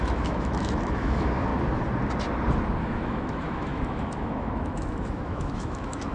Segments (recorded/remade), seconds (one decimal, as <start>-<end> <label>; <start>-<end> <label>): 0.0-1.5 remade; 1.5-2.8 recorded; 2.8-6.1 remade